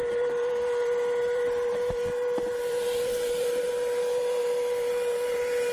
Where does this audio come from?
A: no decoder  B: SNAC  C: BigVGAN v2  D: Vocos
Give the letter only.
C